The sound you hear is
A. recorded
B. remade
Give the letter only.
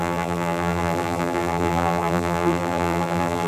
B